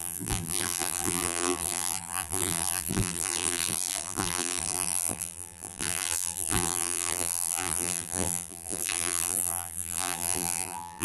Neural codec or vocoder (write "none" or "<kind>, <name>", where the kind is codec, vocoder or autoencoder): vocoder, BigVGAN v2